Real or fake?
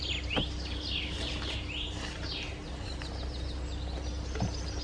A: real